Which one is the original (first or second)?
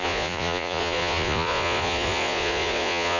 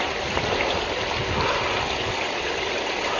second